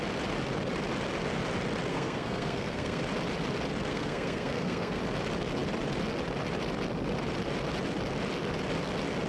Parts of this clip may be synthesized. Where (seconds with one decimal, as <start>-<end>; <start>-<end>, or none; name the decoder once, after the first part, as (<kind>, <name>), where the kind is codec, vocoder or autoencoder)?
1.9-3.0 (codec, SNAC); 3.9-5.0